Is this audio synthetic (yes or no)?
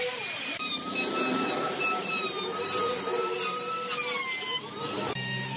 yes